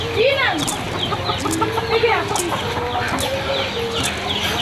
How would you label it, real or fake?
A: real